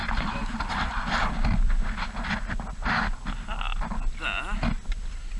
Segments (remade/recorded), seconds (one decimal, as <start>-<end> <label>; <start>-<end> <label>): 0.0-0.9 remade; 0.9-5.4 recorded